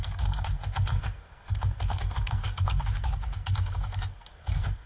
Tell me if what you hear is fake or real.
fake